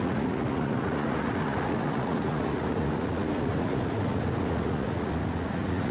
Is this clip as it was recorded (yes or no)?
no